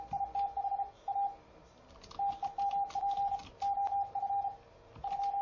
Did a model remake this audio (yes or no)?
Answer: no